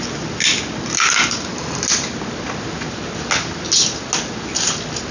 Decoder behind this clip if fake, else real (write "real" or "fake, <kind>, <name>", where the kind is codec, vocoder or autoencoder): real